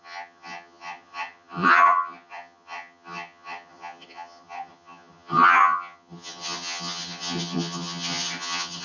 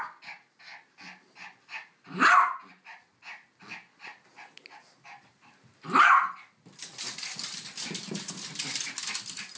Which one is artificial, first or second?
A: first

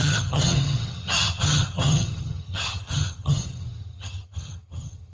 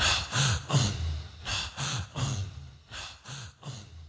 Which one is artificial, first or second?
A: first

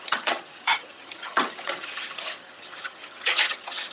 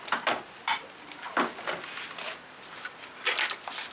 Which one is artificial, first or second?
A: first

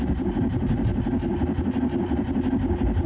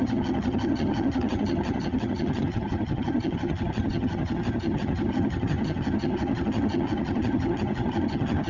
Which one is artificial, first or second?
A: second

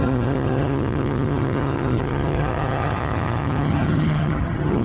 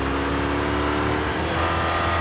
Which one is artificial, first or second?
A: first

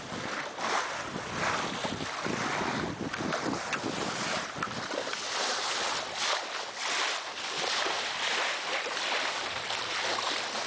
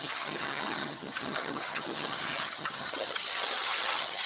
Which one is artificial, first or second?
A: second